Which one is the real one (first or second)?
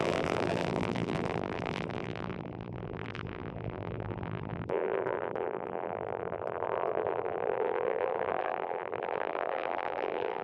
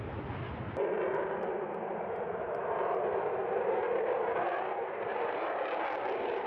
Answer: second